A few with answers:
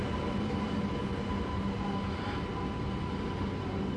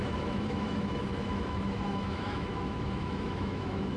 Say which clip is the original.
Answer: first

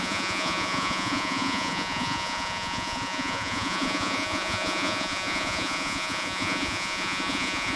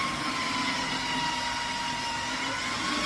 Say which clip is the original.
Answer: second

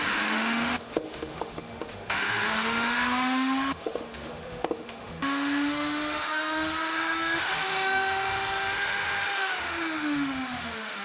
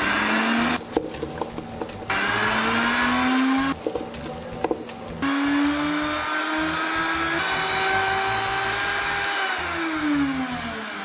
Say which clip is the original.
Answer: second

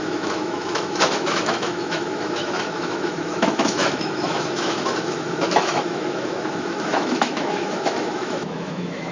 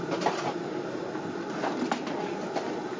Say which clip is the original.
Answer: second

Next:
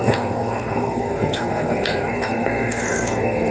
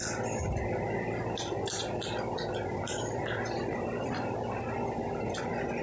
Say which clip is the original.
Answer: second